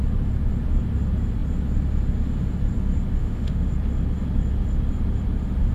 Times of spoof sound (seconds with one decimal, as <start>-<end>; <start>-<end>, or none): 3.2-3.7